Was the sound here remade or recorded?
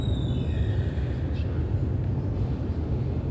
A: recorded